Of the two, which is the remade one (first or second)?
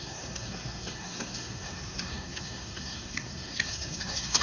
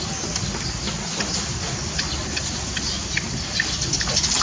first